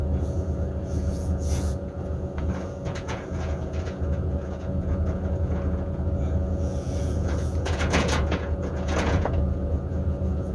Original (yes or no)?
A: no